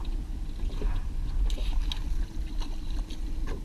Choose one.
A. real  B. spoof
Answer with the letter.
A